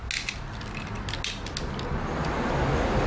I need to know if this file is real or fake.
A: real